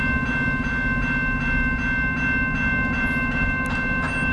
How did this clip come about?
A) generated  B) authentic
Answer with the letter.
B